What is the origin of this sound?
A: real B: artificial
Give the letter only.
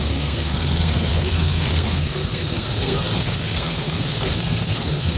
B